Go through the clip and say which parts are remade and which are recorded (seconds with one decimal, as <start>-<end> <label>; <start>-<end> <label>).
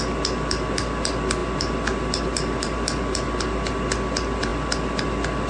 0.0-5.5 recorded